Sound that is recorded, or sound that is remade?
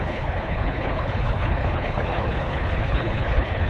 remade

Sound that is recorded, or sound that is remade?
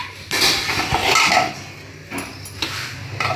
recorded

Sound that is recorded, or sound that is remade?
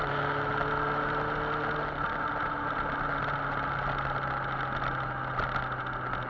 recorded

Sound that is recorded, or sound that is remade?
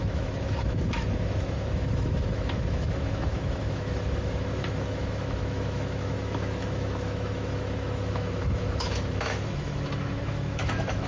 remade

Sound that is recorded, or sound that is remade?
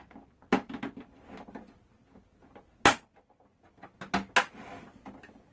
recorded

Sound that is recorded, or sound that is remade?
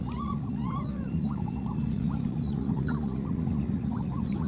remade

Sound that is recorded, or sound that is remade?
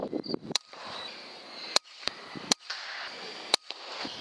remade